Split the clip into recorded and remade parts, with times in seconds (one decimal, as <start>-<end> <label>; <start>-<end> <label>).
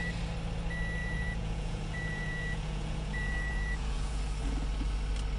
0.0-1.0 recorded; 1.0-4.2 remade; 4.2-5.4 recorded